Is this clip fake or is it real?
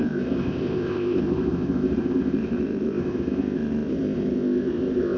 fake